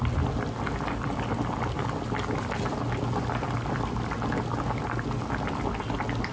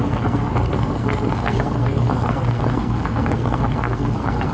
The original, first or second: first